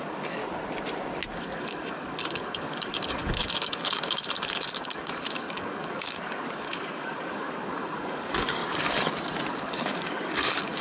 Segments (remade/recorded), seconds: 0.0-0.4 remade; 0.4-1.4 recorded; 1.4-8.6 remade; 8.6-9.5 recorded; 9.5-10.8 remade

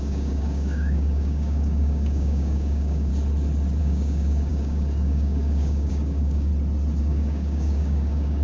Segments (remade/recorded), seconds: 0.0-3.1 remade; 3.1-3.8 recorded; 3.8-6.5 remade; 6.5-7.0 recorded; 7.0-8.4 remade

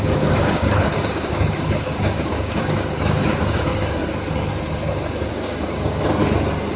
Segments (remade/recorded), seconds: 0.0-4.0 remade; 4.0-5.3 recorded; 5.3-6.2 remade; 6.2-6.8 recorded

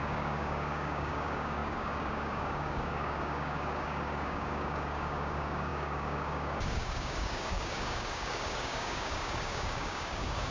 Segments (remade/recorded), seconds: 0.0-10.5 remade

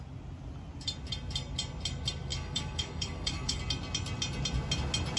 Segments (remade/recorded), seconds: 0.0-2.3 recorded; 2.3-3.6 remade; 3.6-5.2 recorded

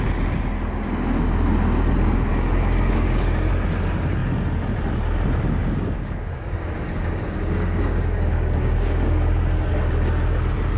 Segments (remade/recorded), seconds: 0.0-2.3 recorded; 2.3-3.5 remade; 3.5-5.6 recorded; 5.6-9.7 remade; 9.7-10.8 recorded

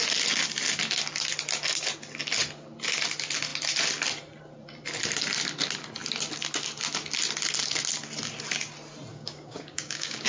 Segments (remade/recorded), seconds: 0.0-9.1 recorded; 9.1-10.3 remade